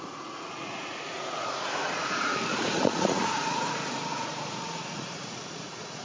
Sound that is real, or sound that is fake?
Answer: fake